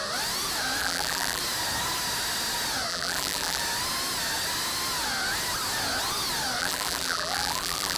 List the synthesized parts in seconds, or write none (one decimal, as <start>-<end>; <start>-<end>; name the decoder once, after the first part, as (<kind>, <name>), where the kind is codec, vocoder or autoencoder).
0.8-1.4 (vocoder, BigVGAN v2); 2.9-3.6; 6.6-8.0